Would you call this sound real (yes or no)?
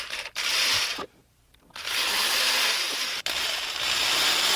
no